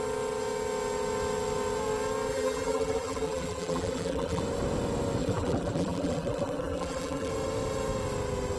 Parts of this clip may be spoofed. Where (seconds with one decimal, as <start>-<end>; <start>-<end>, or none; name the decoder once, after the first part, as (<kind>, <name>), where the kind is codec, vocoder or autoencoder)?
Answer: 2.3-4.4 (vocoder, BigVGAN v2); 5.2-7.3